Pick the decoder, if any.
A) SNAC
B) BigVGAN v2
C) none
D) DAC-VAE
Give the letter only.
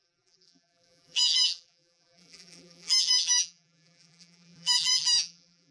B